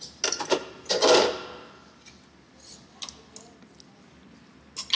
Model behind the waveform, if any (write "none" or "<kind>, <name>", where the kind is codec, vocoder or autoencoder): none